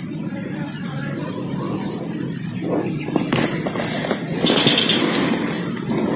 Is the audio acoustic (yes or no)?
yes